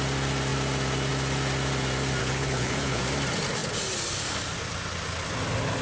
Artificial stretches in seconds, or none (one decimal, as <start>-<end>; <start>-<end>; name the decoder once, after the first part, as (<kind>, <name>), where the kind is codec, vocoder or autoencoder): 2.2-3.0 (codec, HILCodec)